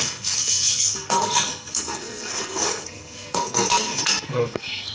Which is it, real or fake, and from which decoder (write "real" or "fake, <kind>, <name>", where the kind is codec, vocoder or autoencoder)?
fake, codec, SNAC